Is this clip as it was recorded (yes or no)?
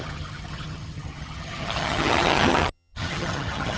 no